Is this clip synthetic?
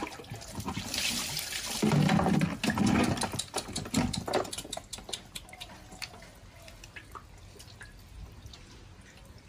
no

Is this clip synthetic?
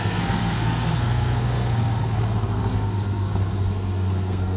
yes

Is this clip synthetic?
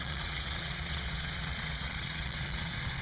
yes